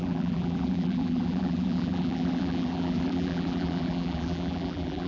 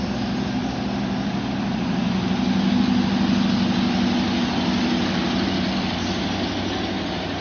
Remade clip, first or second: first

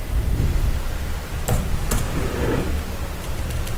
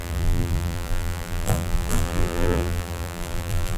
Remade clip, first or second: second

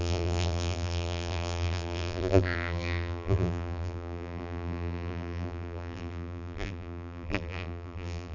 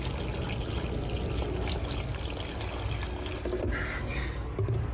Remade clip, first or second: first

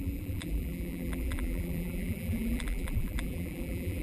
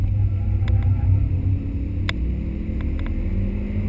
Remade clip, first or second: first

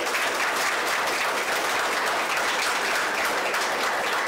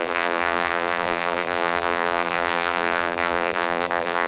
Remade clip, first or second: second